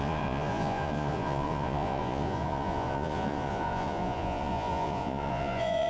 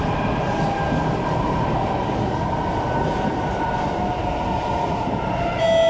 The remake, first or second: first